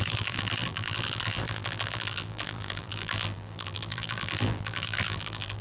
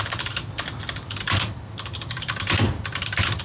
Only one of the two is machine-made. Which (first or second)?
first